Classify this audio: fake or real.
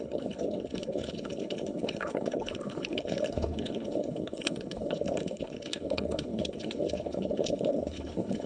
fake